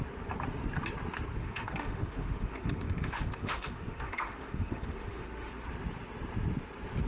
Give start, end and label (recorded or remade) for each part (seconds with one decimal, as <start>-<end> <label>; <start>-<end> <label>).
0.0-1.4 recorded; 1.4-5.5 remade; 5.5-7.1 recorded